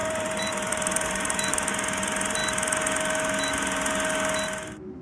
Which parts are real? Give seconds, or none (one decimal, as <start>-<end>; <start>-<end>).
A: 1.7-5.0